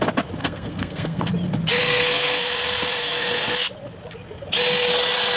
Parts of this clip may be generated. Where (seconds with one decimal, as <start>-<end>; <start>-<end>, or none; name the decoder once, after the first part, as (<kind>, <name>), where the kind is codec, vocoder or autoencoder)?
0.4-1.3 (codec, SNAC); 1.8-2.4; 3.0-3.7